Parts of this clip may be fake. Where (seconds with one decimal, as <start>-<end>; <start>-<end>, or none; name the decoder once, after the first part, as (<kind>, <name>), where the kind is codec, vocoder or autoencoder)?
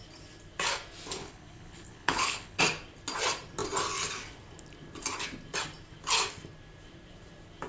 1.2-2.6 (codec, HILCodec)